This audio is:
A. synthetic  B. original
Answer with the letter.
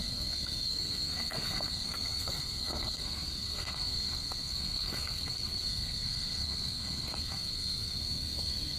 A